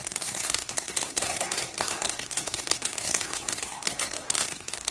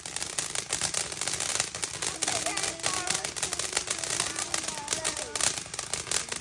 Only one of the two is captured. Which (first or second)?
second